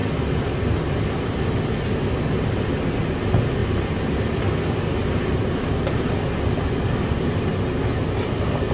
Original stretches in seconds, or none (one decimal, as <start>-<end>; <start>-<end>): 0.0-8.7